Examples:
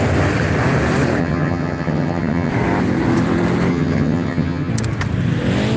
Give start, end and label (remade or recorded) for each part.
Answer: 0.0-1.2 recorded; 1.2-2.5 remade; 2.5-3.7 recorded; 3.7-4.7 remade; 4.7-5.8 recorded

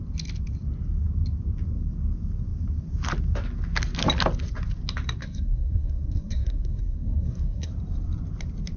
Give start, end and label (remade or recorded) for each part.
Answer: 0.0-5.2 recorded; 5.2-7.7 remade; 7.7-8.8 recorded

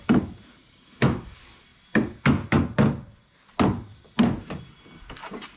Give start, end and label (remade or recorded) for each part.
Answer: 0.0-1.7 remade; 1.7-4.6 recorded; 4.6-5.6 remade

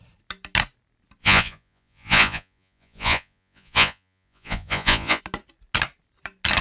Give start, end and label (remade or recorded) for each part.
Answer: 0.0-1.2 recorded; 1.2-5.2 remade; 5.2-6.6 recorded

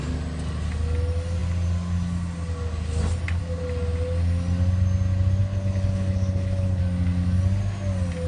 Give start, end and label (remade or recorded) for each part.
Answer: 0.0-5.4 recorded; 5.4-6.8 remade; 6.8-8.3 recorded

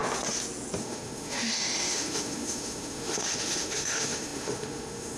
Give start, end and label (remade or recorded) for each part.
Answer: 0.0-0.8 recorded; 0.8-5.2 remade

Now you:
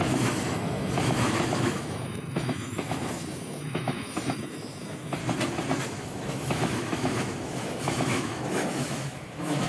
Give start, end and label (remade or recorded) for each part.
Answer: 0.0-5.2 remade; 5.2-5.8 recorded; 5.8-9.7 remade